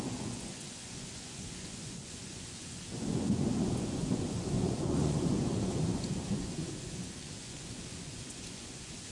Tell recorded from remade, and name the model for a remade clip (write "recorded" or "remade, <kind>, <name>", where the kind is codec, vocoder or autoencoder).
remade, vocoder, Vocos